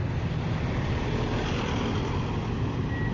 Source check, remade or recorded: recorded